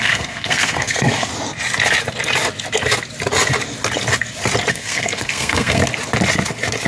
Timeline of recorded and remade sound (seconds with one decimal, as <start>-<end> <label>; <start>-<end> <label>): 0.0-1.3 remade; 1.3-4.7 recorded; 4.7-5.8 remade; 5.8-6.9 recorded